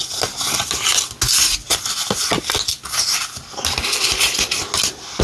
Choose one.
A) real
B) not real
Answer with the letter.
A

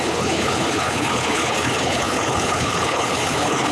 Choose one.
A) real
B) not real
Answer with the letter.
B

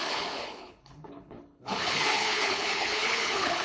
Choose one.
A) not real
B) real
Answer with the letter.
A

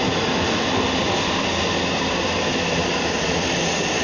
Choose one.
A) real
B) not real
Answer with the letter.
A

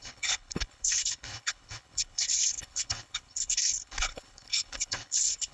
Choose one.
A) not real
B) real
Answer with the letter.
A